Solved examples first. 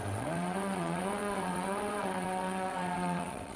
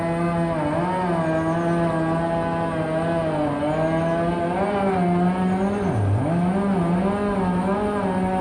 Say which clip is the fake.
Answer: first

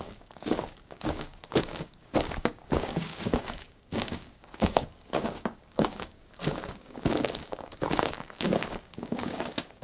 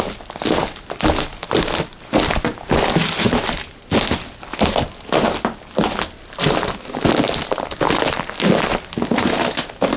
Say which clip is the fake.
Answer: first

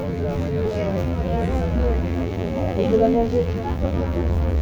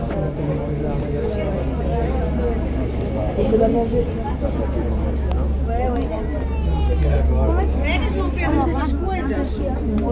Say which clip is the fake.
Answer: first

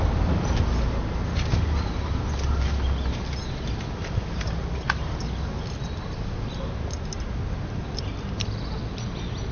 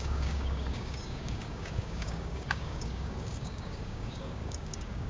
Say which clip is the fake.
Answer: second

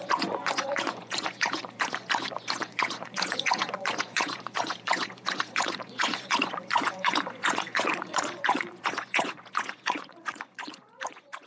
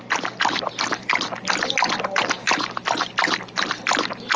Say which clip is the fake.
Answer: first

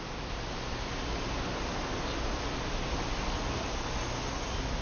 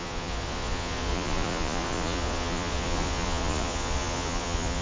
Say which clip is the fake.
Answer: second